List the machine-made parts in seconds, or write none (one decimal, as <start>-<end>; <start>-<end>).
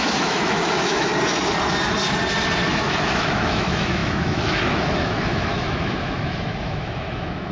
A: 0.0-1.1; 2.7-7.5